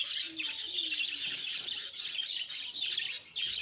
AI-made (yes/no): no